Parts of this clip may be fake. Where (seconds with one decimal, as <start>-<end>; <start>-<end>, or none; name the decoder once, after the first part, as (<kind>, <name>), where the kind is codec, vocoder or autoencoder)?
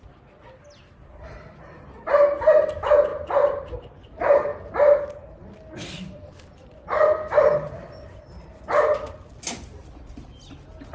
5.4-7.6 (vocoder, BigVGAN v2)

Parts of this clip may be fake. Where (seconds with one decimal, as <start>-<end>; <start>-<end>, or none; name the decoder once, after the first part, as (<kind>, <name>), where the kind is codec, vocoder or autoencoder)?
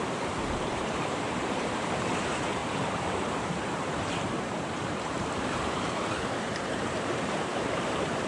0.0-8.3 (vocoder, BigVGAN v2)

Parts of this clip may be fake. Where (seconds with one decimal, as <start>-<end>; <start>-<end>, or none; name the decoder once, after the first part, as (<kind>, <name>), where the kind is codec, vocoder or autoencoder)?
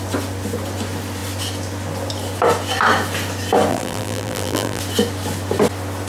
3.7-4.8 (vocoder, BigVGAN v2)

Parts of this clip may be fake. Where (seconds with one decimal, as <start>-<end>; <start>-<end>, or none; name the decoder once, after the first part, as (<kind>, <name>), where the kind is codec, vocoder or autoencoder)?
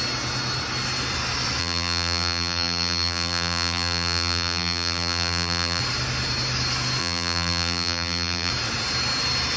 1.6-5.8 (vocoder, BigVGAN v2); 7.0-8.5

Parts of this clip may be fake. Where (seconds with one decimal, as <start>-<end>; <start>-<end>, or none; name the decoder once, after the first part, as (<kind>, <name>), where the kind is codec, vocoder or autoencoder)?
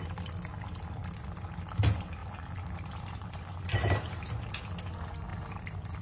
2.2-4.5 (vocoder, BigVGAN v2)